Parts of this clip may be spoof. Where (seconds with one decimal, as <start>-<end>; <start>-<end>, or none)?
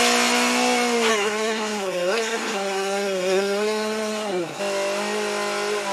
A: 1.1-4.6